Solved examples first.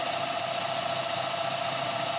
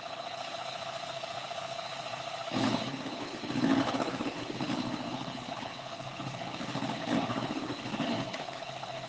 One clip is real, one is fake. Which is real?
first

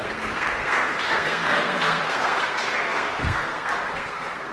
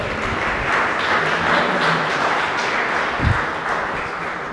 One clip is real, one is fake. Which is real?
second